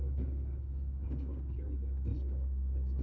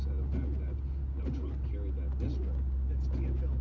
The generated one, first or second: first